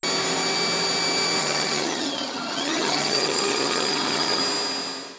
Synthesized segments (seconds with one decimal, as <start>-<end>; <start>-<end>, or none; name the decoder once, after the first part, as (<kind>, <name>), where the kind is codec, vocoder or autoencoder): 1.4-4.4 (vocoder, HiFi-GAN)